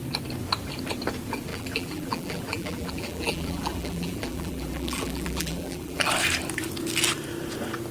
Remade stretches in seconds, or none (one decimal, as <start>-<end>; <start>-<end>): 1.5-6.1